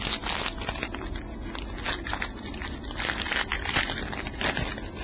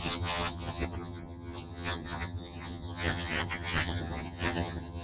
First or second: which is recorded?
first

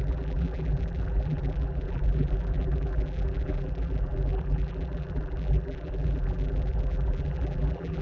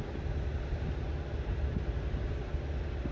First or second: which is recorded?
second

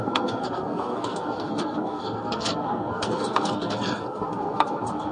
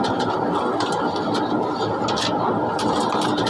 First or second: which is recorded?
second